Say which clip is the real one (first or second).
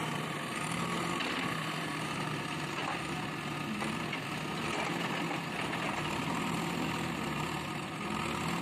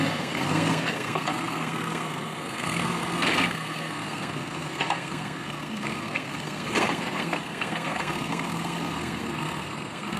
first